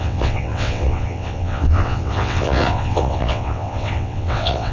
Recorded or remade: remade